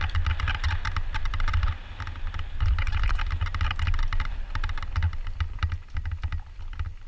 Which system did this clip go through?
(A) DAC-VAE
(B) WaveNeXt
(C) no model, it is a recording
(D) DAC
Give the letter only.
C